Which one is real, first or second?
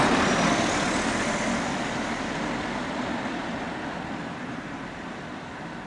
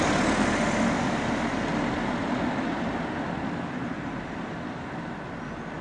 second